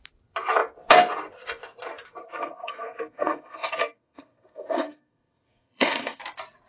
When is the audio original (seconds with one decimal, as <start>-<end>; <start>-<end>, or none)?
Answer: 0.0-2.2; 6.2-6.7